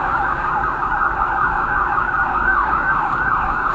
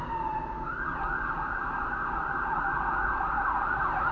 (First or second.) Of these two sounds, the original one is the second